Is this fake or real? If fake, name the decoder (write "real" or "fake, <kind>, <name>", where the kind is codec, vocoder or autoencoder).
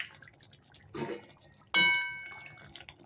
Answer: real